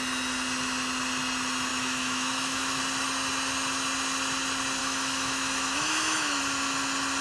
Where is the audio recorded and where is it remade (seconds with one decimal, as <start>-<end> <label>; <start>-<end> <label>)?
0.0-1.7 recorded; 1.7-2.8 remade; 2.8-4.8 recorded; 4.8-6.4 remade; 6.4-7.2 recorded